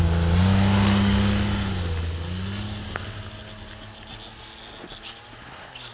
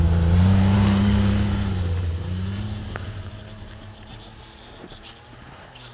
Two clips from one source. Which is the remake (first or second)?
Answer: second